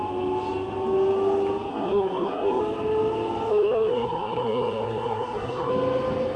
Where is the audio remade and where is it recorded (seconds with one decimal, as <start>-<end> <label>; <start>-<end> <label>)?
0.0-1.7 recorded; 1.7-2.6 remade; 2.6-3.5 recorded; 3.5-5.7 remade; 5.7-6.4 recorded